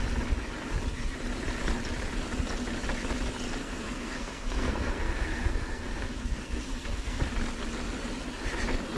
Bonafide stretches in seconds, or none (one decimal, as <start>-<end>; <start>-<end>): 0.0-3.6; 7.2-9.0